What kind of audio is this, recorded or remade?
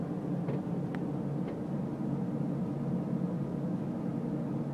recorded